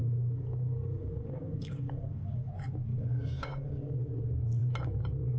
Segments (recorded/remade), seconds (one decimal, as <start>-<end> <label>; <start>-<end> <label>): 0.0-2.5 remade; 2.5-2.9 recorded; 2.9-4.1 remade; 4.1-5.4 recorded